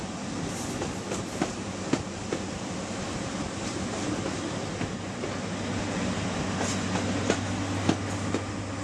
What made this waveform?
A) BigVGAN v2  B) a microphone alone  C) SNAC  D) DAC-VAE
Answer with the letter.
B